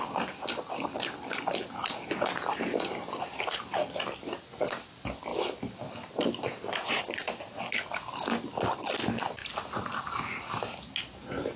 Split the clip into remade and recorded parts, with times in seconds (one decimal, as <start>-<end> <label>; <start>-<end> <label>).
0.0-11.6 recorded